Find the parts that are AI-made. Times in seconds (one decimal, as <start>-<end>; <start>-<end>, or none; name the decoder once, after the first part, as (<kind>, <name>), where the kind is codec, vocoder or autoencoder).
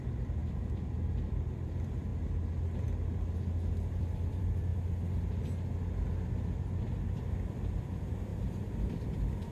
0.0-2.1 (vocoder, BigVGAN v2); 3.9-4.7; 6.9-9.5